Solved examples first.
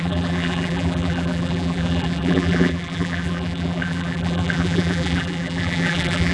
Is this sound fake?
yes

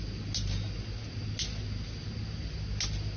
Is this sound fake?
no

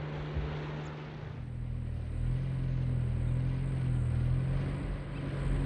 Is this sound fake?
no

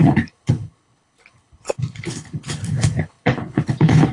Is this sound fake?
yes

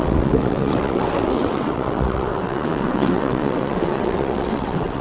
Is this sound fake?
yes